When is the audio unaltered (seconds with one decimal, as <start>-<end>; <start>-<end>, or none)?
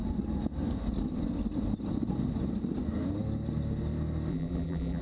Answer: 0.0-4.3